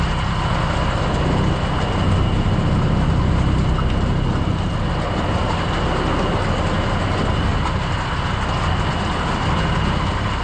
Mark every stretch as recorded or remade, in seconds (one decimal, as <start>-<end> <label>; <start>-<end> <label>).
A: 0.0-10.4 recorded